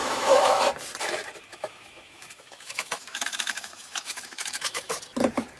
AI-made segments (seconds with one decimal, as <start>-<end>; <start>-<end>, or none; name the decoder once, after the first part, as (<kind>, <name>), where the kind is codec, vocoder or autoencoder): 0.0-0.6 (autoencoder, DAC-VAE); 1.5-4.9